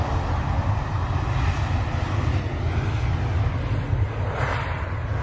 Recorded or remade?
recorded